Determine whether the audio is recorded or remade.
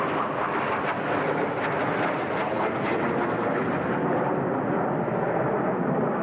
recorded